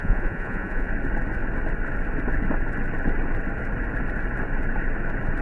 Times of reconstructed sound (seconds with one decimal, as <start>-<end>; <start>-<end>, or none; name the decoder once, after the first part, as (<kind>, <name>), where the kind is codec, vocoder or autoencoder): 0.0-0.9 (vocoder, Vocos)